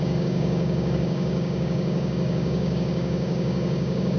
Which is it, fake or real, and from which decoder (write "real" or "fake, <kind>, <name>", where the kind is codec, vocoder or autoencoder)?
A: fake, codec, DAC